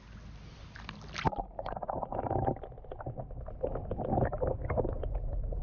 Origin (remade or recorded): recorded